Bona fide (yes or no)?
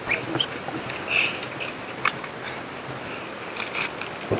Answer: yes